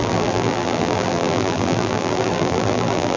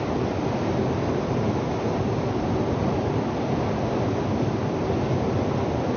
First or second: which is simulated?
first